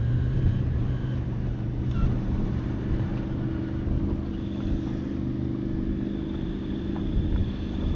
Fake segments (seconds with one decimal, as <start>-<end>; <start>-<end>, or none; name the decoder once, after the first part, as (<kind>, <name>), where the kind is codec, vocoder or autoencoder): 0.0-3.1 (vocoder, BigVGAN v2); 6.6-8.0